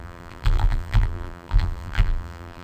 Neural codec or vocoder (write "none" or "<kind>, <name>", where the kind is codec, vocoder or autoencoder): vocoder, BigVGAN v2